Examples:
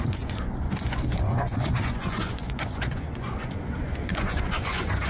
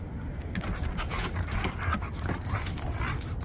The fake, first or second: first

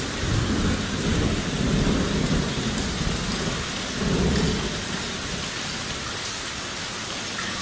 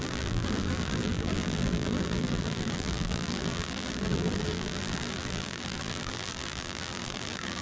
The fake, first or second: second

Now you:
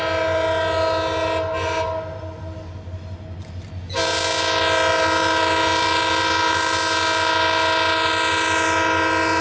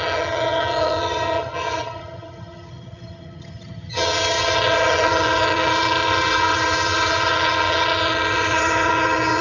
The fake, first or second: second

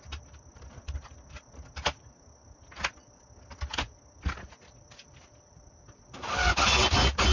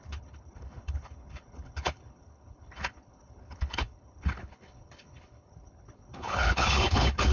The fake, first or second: second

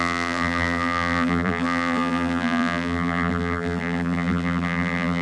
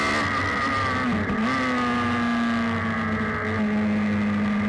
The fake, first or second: first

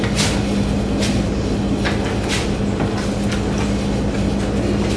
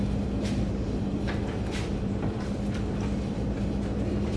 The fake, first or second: second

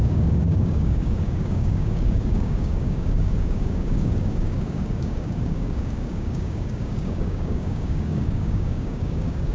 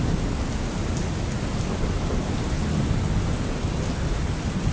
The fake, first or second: first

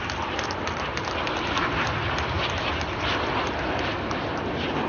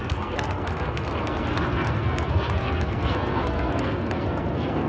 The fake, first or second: second